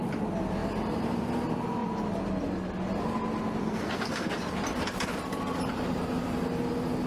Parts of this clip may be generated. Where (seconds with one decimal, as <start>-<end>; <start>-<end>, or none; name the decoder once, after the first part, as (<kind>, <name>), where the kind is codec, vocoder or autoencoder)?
3.6-4.3 (codec, SNAC)